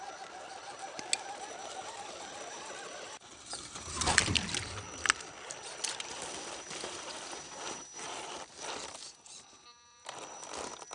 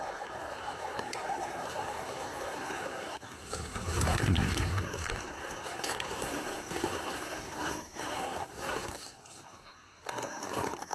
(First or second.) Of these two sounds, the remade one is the second